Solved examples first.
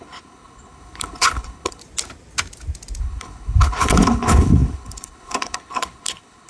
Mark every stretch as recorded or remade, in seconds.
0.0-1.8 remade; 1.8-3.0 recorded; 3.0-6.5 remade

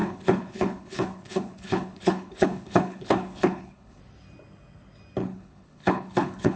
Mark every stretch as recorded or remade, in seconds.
0.0-4.0 remade; 4.0-5.2 recorded; 5.2-6.6 remade

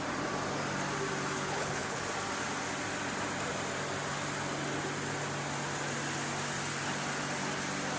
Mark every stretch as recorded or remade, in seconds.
0.0-1.4 recorded; 1.4-2.0 remade; 2.0-8.0 recorded

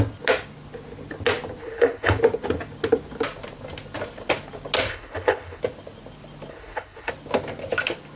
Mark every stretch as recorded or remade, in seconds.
0.0-1.6 recorded; 1.6-2.2 remade; 2.2-4.9 recorded; 4.9-5.6 remade; 5.6-6.5 recorded; 6.5-7.1 remade; 7.1-8.2 recorded

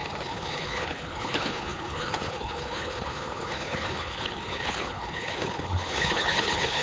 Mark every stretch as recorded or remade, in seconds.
0.0-6.8 remade

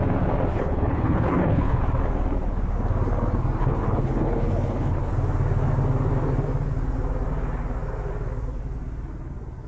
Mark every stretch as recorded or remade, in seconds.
0.0-0.5 recorded; 0.5-1.8 remade; 1.8-3.6 recorded; 3.6-5.1 remade; 5.1-9.7 recorded

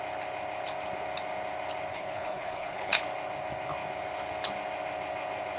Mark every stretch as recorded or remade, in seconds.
0.0-1.9 recorded; 1.9-3.0 remade; 3.0-5.6 recorded

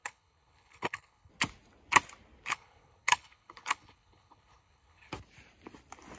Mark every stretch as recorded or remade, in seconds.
0.0-1.3 remade; 1.3-2.5 recorded; 2.5-5.1 remade; 5.1-6.2 recorded